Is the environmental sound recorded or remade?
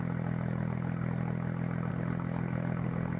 recorded